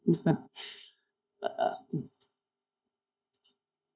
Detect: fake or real fake